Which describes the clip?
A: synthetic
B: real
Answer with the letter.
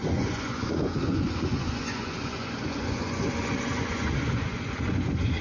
A